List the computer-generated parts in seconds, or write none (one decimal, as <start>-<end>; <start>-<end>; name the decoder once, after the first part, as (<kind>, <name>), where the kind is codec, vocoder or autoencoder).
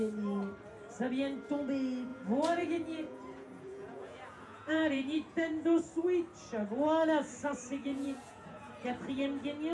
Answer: 2.1-5.8 (vocoder, Vocos); 7.8-8.7